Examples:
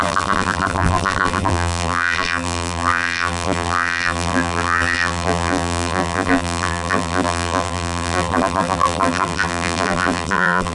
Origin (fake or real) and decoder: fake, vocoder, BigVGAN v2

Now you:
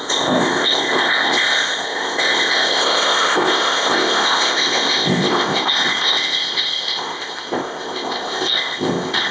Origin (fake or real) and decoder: fake, codec, ZipCodec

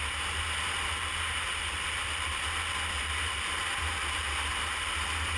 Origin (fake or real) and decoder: real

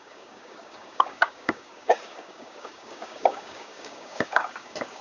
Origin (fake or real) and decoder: fake, codec, DAC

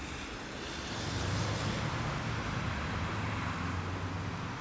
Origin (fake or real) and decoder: real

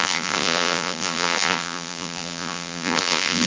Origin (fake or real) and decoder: fake, vocoder, BigVGAN v2